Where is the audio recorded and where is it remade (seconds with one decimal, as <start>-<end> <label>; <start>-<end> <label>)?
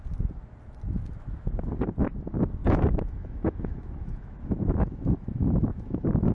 0.0-2.6 recorded; 2.6-6.3 remade